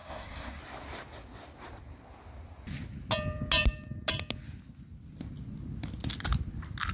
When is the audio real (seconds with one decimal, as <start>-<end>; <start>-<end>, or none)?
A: 0.6-6.9